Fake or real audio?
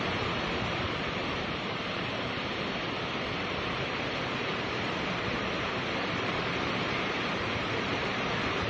fake